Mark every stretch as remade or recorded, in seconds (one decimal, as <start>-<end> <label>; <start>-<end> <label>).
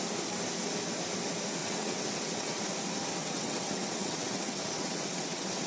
0.0-1.6 recorded; 1.6-2.6 remade; 2.6-3.2 recorded; 3.2-5.7 remade